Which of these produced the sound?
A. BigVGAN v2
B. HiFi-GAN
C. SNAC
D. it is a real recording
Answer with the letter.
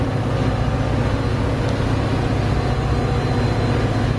D